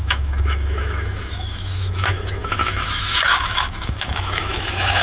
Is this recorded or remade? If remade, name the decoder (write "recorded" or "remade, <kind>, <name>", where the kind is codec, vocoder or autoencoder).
remade, autoencoder, DAC-VAE